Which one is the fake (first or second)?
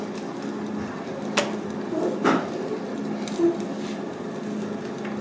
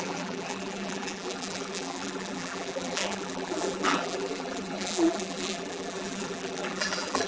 second